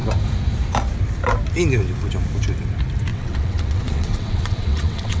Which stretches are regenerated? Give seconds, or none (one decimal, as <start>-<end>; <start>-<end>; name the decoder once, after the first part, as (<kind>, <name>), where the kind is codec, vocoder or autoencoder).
3.1-5.2 (vocoder, WaveNeXt)